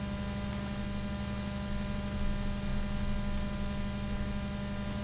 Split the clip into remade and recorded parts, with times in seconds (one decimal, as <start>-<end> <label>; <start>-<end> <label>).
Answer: 0.0-5.0 recorded